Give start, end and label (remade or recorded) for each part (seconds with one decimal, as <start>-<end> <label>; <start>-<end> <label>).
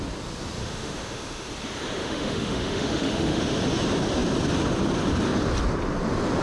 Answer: 0.0-0.6 recorded; 0.6-1.5 remade; 1.5-2.0 recorded; 2.0-3.4 remade; 3.4-6.4 recorded